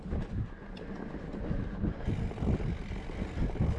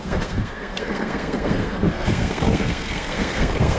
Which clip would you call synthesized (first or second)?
second